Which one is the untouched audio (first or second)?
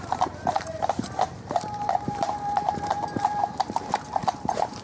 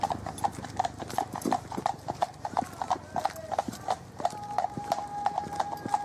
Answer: second